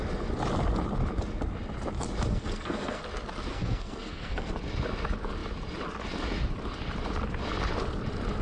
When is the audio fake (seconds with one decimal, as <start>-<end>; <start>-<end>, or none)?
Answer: 2.3-3.0; 3.5-4.5